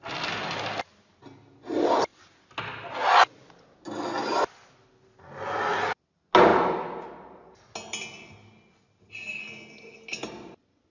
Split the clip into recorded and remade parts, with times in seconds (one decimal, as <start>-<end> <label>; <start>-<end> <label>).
0.0-6.5 recorded; 6.5-7.6 remade; 7.6-10.9 recorded